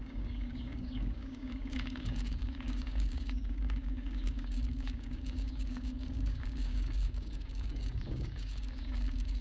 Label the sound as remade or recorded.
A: remade